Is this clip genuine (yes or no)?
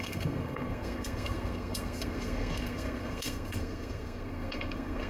no